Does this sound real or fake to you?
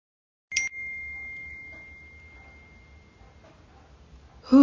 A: real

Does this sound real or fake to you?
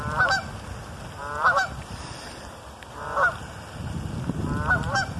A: fake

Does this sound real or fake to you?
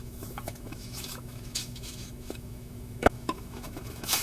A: fake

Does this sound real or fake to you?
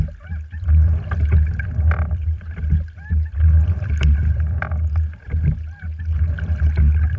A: real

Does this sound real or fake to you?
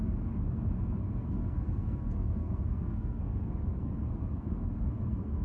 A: fake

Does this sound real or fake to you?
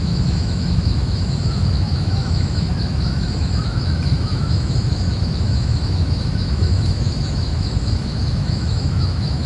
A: fake